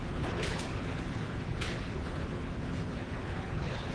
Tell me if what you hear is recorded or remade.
remade